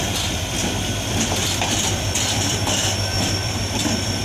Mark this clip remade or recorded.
remade